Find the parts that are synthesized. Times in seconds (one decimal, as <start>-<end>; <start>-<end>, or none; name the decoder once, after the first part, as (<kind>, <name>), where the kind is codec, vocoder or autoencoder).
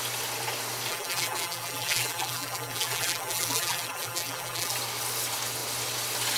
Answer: 0.9-4.7 (vocoder, BigVGAN v2)